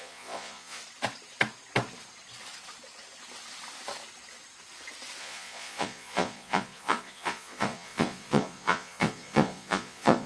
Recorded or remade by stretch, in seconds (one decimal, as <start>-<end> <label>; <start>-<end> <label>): 0.0-0.8 remade; 0.8-5.2 recorded; 5.2-10.3 remade